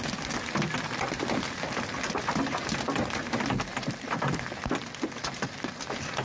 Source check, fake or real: real